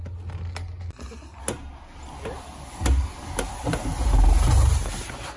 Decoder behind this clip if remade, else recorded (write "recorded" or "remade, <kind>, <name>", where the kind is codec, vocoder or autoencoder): recorded